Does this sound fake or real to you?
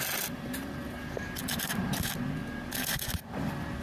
real